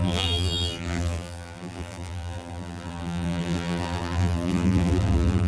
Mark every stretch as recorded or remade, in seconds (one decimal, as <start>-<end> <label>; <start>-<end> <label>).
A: 0.0-5.5 remade